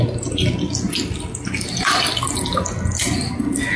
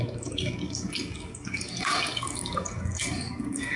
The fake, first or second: second